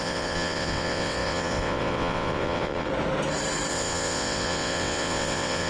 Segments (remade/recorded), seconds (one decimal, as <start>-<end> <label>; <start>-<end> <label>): 0.0-2.9 remade; 2.9-3.7 recorded; 3.7-5.7 remade